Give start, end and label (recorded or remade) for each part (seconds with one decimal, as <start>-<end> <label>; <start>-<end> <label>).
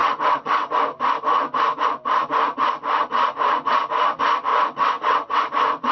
0.0-0.8 remade; 0.8-4.5 recorded; 4.5-5.4 remade; 5.4-5.9 recorded